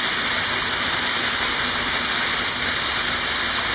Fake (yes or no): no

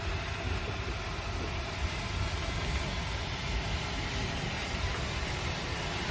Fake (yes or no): no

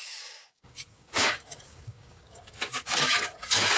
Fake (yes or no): yes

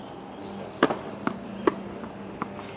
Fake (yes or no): no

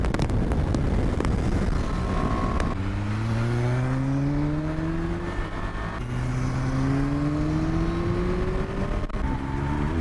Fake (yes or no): no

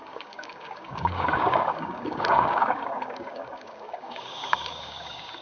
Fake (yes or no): yes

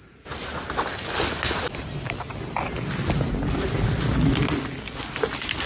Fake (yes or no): no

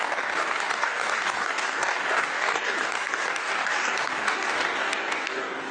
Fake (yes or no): yes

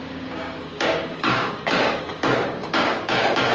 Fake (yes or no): yes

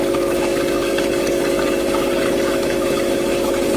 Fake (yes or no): yes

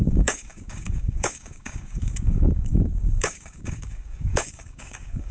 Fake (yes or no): yes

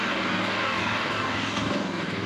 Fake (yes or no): yes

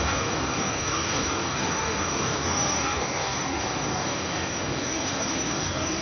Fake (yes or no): yes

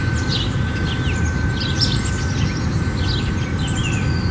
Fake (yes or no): no